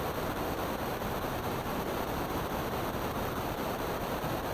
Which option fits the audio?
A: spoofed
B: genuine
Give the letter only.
A